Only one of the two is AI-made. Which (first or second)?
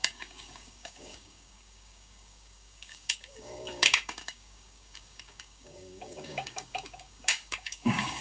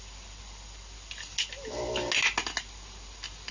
first